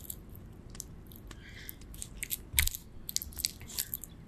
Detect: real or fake real